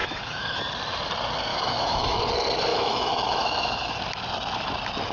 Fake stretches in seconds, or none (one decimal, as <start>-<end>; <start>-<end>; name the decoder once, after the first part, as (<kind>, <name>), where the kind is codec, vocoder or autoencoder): 0.0-0.6 (autoencoder, DAC-VAE); 1.5-2.2; 2.7-3.9